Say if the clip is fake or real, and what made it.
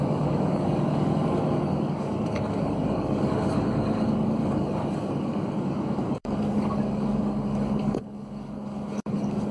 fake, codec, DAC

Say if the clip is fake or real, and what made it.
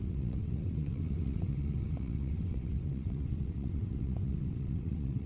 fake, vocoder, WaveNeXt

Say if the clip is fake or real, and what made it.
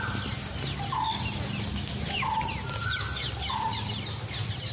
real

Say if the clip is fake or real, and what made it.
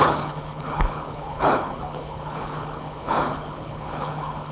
fake, codec, HILCodec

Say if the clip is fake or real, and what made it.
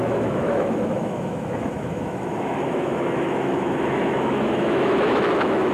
fake, autoencoder, DAC-VAE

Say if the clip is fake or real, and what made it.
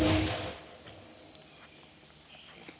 real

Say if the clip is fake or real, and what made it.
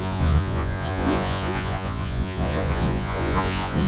fake, vocoder, Vocos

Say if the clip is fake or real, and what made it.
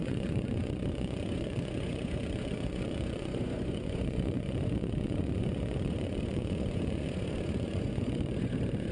fake, vocoder, Vocos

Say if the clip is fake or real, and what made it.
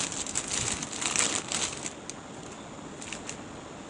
real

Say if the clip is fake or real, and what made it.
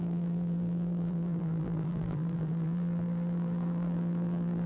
fake, vocoder, BigVGAN v2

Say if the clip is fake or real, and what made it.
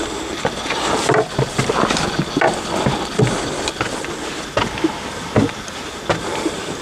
real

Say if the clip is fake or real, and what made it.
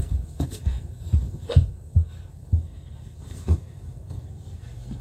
fake, codec, SNAC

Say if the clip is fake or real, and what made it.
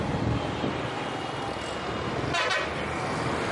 real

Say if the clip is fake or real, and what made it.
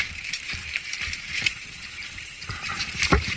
fake, vocoder, BigVGAN v2